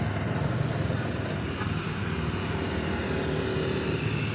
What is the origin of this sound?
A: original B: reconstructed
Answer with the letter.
A